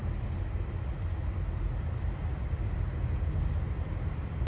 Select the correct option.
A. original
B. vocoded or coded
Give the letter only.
A